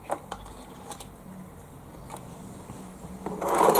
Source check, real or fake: real